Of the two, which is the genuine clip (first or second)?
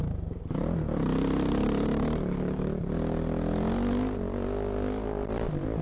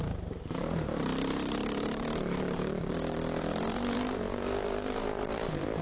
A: first